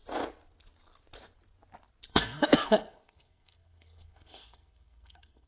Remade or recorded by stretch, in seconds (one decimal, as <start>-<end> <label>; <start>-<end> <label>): 0.0-2.1 recorded; 2.1-5.5 remade